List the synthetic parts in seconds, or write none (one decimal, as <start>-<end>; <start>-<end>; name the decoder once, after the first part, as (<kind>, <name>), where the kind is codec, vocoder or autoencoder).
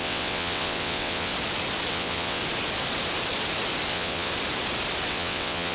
0.0-1.3 (vocoder, WaveNeXt); 1.9-2.4; 3.9-4.3; 5.1-5.7